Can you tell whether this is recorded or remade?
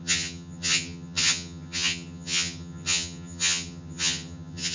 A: remade